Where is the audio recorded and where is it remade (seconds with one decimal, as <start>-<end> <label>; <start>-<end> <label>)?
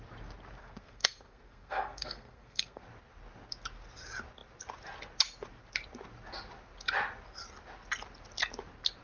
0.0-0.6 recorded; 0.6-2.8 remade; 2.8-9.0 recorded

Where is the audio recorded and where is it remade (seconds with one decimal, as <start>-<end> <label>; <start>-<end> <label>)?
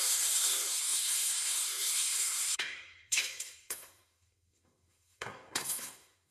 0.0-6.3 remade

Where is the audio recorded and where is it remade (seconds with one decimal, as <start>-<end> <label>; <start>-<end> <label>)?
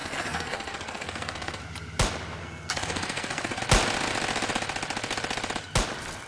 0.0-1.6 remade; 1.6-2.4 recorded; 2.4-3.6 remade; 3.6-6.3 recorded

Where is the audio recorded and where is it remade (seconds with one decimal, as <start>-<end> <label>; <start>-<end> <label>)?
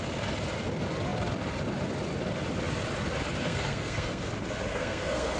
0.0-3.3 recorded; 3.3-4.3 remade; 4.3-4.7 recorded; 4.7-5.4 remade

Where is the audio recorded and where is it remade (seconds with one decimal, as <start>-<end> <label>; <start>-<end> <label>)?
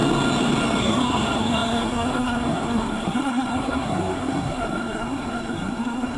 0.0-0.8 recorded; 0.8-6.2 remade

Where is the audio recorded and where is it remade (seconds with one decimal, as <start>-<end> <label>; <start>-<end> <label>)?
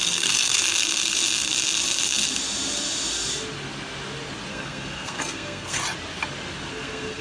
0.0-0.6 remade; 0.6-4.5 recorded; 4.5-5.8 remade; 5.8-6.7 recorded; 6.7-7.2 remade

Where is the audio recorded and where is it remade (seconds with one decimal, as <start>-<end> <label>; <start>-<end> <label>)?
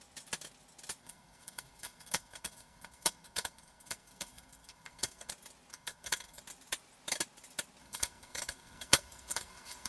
0.0-1.0 recorded; 1.0-5.3 remade; 5.3-5.7 recorded; 5.7-6.4 remade; 6.4-7.8 recorded; 7.8-9.9 remade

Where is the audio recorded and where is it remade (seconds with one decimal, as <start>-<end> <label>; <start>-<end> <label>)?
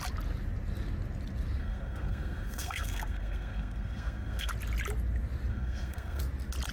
0.0-1.6 recorded; 1.6-4.5 remade; 4.5-5.5 recorded; 5.5-6.2 remade; 6.2-6.7 recorded